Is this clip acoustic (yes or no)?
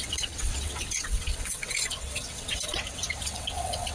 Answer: no